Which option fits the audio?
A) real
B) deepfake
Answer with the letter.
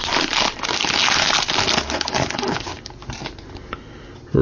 A